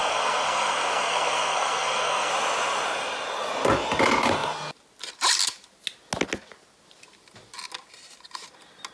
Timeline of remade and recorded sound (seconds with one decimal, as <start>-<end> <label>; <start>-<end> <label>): 0.0-2.3 remade; 2.3-8.9 recorded